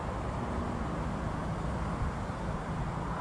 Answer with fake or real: real